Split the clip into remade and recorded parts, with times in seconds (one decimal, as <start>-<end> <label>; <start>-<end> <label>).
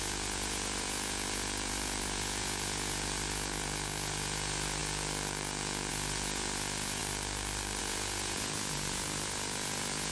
0.0-7.0 remade; 7.0-7.8 recorded; 7.8-10.1 remade